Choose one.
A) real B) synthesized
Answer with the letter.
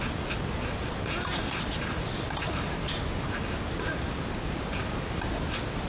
A